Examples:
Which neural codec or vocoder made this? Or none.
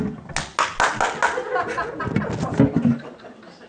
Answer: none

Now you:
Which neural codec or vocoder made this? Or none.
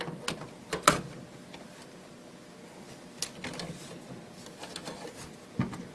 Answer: none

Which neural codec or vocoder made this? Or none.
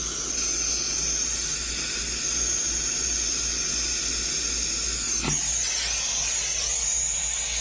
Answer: none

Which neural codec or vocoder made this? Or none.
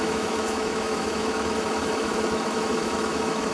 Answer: autoencoder, DAC-VAE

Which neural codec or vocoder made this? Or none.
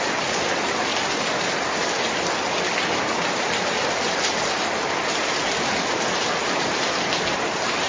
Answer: none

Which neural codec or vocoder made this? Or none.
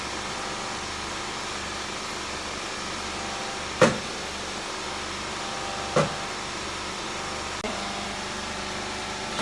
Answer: none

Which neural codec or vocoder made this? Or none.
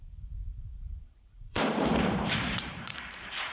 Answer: vocoder, BigVGAN v2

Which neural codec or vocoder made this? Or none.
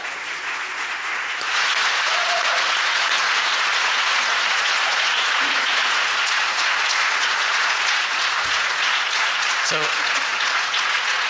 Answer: vocoder, Vocos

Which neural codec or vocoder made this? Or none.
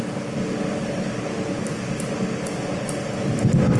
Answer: none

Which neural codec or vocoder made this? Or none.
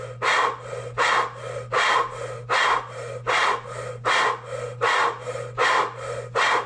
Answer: none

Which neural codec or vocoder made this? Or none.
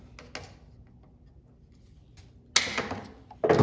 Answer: none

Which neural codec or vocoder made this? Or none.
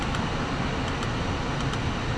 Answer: none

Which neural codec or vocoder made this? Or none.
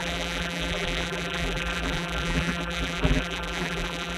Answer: vocoder, BigVGAN v2